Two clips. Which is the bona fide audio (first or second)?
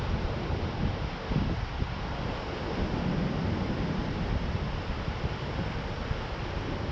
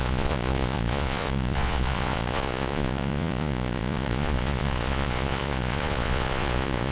first